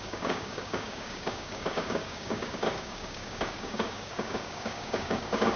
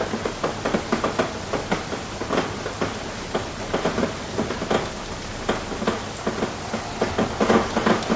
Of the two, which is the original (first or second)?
second